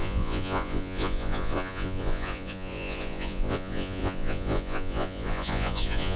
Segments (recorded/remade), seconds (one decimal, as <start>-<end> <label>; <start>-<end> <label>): 0.0-6.2 remade